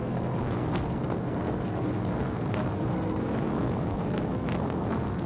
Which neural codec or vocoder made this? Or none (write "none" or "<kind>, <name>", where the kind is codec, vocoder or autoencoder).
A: codec, SNAC